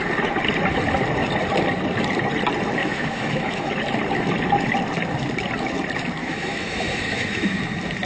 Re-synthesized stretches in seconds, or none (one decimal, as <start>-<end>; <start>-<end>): 2.8-3.7; 6.2-7.6